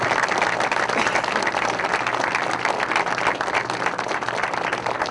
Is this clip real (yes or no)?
yes